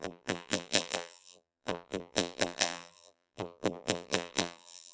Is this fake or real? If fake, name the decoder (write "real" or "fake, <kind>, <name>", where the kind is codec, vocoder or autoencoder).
fake, vocoder, BigVGAN v2